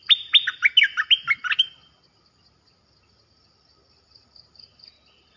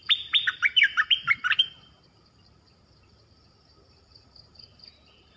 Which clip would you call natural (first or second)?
first